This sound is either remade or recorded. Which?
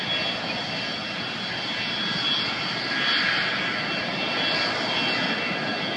recorded